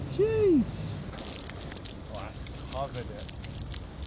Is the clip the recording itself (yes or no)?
yes